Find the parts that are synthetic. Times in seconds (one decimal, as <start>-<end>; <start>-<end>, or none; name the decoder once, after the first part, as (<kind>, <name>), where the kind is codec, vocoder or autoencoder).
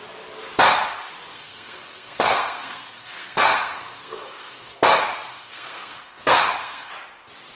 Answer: 1.3-4.8 (codec, SNAC); 5.3-6.9